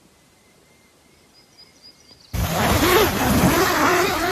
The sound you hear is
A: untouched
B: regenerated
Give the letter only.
B